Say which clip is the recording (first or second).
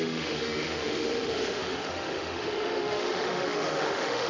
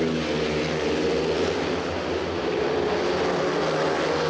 second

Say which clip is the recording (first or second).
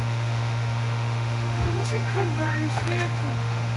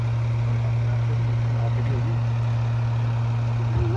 second